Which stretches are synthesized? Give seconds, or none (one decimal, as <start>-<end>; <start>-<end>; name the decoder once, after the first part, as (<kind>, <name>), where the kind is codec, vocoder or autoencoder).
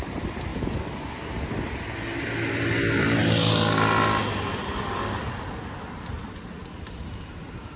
0.5-1.2 (vocoder, BigVGAN v2); 6.6-7.2